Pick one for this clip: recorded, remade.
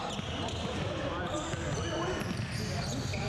recorded